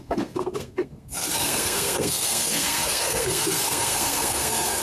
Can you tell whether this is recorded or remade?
remade